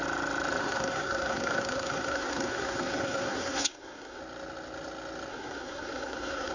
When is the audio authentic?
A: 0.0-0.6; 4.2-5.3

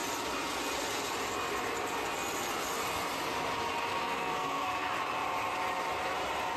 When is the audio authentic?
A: 0.0-3.9; 4.9-6.6

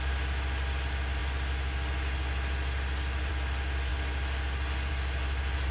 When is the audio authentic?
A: 0.0-5.7

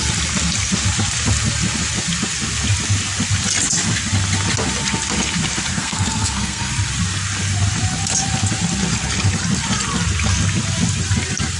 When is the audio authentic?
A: 0.0-5.7; 6.7-11.6

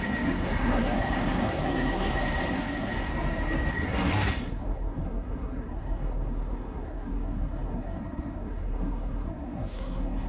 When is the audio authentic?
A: 3.1-3.7

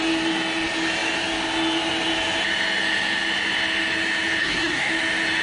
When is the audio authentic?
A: 0.0-4.4; 4.9-5.4

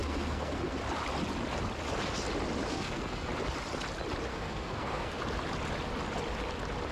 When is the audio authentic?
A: 0.8-2.7; 3.3-4.3; 5.2-6.9